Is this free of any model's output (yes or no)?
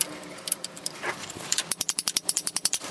no